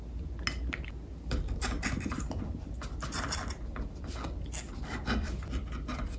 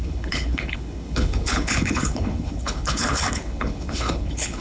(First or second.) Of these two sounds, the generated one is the second